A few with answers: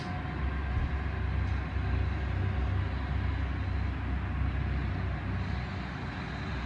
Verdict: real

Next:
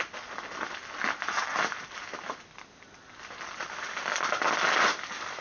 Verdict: real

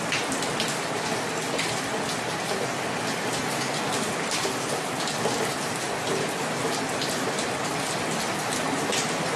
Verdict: real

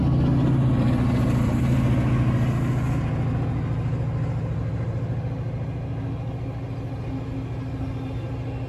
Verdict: real